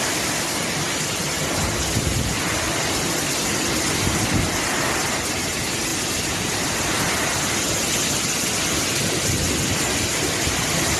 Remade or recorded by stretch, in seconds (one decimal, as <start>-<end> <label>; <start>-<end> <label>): 0.0-11.0 recorded